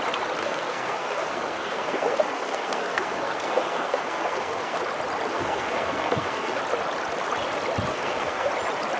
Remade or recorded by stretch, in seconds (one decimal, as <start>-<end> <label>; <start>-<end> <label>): 0.0-0.4 recorded; 0.4-4.8 remade; 4.8-5.3 recorded; 5.3-6.6 remade; 6.6-7.9 recorded; 7.9-8.5 remade; 8.5-9.0 recorded